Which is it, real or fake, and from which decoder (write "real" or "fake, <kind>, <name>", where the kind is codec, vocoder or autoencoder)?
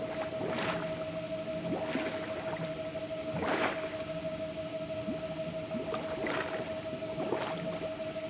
real